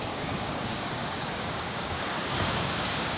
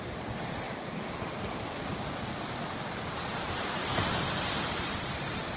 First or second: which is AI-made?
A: first